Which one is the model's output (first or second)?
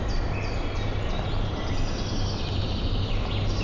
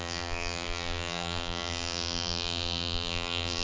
second